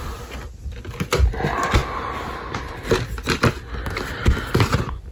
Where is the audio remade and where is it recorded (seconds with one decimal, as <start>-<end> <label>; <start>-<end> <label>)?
0.0-5.1 recorded